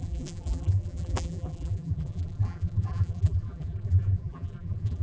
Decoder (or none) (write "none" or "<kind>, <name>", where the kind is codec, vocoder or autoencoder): vocoder, BigVGAN v2